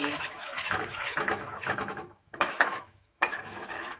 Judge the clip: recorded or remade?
remade